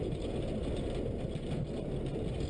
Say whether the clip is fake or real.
real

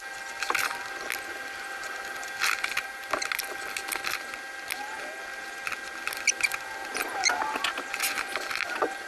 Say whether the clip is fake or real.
real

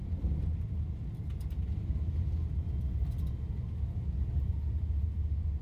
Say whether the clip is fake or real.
real